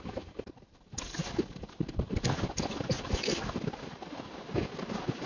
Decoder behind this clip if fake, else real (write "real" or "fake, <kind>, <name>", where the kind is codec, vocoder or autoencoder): real